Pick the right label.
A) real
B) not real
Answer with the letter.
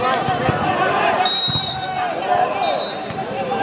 A